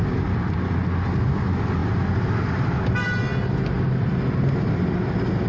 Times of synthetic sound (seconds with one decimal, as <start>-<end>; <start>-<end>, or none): none